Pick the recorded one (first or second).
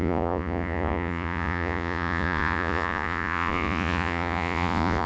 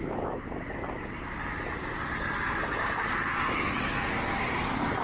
second